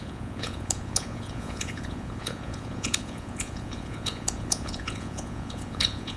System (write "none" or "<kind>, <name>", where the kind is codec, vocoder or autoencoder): vocoder, Vocos